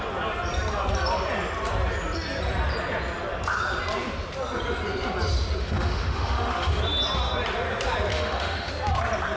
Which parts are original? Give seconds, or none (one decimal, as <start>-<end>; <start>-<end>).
0.0-5.6; 6.8-8.1; 8.7-9.4